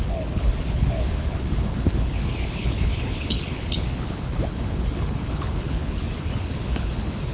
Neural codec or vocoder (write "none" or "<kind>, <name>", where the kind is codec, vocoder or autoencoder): codec, HILCodec